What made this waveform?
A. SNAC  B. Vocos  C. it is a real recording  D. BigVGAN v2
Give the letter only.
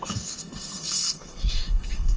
A